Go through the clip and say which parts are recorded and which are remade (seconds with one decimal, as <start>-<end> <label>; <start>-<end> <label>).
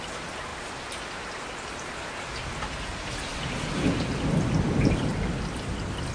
0.0-6.1 recorded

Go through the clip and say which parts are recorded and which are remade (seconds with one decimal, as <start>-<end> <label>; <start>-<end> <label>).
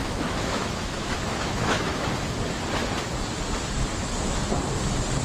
0.0-1.9 remade; 1.9-5.2 recorded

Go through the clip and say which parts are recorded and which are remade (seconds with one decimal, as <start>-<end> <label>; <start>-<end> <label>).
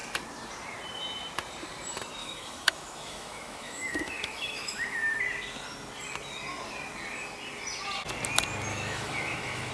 0.0-2.2 recorded; 2.2-5.2 remade; 5.2-8.7 recorded; 8.7-9.7 remade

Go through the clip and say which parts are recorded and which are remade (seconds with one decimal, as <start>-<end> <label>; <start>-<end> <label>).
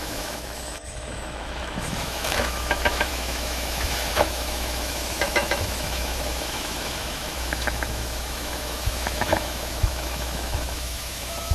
0.0-11.5 remade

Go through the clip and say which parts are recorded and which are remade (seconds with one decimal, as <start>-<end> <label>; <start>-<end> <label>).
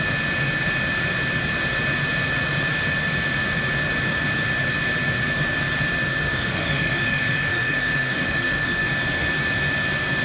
0.0-6.1 recorded; 6.1-8.9 remade; 8.9-10.2 recorded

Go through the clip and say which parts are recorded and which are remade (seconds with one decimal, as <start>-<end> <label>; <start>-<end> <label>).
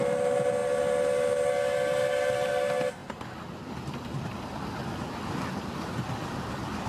0.0-6.9 recorded